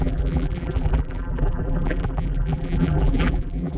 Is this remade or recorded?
remade